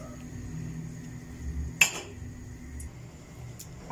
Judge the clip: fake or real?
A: real